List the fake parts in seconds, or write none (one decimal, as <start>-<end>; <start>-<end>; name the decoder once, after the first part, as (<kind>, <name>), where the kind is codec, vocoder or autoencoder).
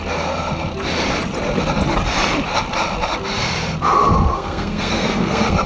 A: 4.3-5.7 (codec, SNAC)